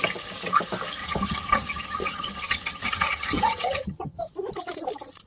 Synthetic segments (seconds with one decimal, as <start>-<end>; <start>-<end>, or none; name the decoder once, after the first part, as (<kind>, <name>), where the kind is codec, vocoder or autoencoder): 1.0-4.2 (vocoder, HiFi-GAN)